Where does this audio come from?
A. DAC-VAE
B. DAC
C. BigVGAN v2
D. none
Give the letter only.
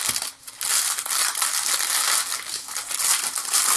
D